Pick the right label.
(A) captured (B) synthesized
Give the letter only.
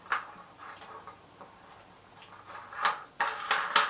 A